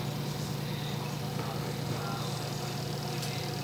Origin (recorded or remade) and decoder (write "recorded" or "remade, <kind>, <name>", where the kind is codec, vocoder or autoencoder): recorded